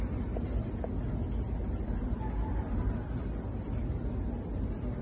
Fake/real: real